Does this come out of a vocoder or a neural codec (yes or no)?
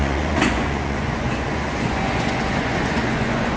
yes